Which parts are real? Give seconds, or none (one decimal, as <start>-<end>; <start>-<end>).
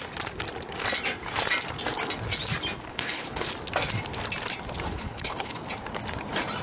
0.0-2.9; 3.5-4.9; 5.6-6.6